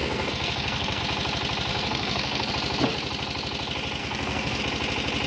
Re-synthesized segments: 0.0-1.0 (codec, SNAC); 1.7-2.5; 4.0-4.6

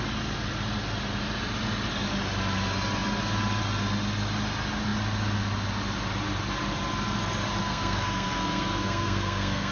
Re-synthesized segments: 7.6-9.7 (codec, SNAC)

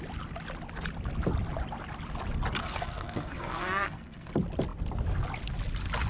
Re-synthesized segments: 2.6-4.3 (codec, SNAC)

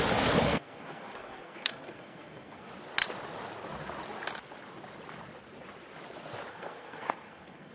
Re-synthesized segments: 0.5-2.7 (codec, SNAC); 6.5-7.7

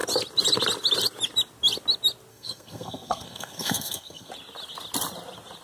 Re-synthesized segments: 2.3-4.3 (codec, SNAC)

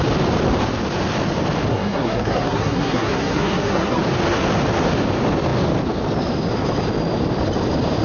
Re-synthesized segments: 1.7-4.0 (codec, SNAC)